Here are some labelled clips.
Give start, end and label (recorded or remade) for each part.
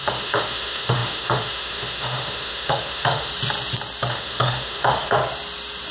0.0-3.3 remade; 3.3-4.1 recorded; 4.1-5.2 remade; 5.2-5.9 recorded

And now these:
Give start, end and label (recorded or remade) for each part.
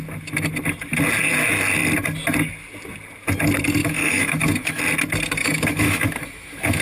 0.0-3.8 recorded; 3.8-4.8 remade; 4.8-5.4 recorded; 5.4-6.8 remade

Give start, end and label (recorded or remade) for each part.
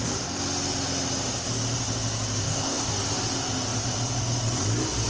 0.0-2.4 recorded; 2.4-2.9 remade; 2.9-5.1 recorded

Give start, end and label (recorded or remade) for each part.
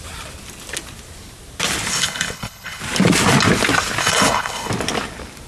0.0-1.9 recorded; 1.9-2.8 remade; 2.8-4.0 recorded; 4.0-4.7 remade; 4.7-5.5 recorded